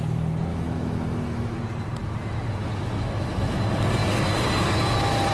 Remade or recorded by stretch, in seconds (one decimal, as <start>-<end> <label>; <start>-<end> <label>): 0.0-0.5 recorded; 0.5-1.6 remade; 1.6-2.6 recorded; 2.6-3.6 remade; 3.6-5.3 recorded